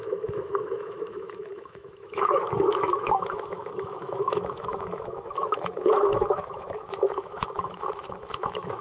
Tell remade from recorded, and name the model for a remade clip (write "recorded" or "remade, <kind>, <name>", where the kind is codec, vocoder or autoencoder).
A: remade, autoencoder, DAC-VAE